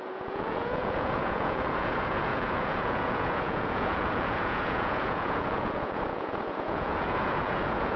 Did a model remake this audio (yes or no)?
yes